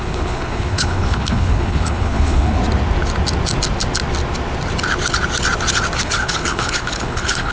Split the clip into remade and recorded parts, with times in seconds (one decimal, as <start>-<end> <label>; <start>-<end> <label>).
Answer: 0.0-2.6 remade; 2.6-6.0 recorded; 6.0-7.5 remade